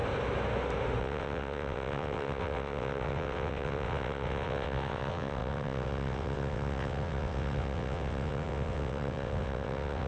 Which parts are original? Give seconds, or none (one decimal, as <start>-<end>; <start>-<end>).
0.0-1.0